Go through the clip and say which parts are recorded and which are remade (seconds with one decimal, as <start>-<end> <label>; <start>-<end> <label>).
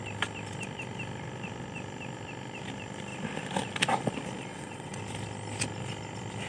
0.0-4.5 recorded; 4.5-5.0 remade; 5.0-6.5 recorded